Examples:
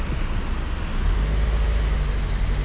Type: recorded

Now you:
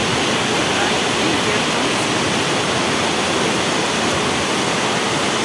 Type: recorded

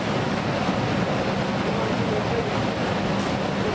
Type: recorded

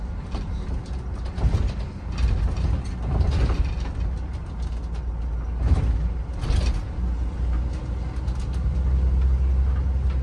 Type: recorded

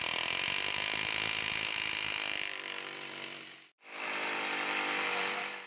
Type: remade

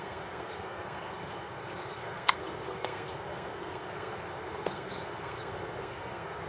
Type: remade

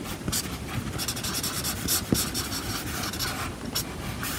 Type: recorded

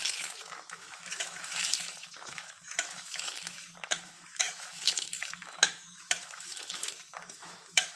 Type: remade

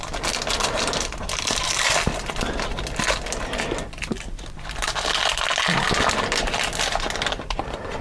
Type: recorded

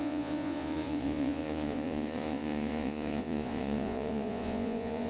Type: remade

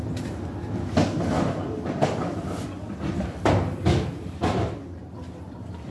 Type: recorded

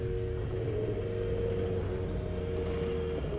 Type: recorded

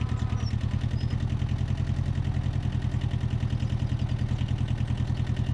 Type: recorded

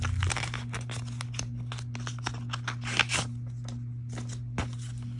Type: recorded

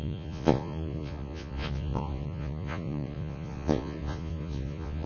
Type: remade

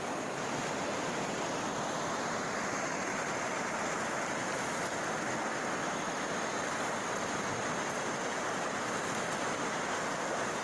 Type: recorded